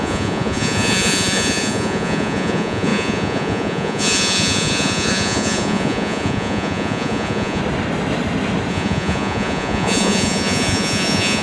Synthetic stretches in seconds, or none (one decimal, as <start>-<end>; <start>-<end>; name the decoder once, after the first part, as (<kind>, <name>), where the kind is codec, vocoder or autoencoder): 0.0-7.6 (vocoder, Vocos); 8.7-11.4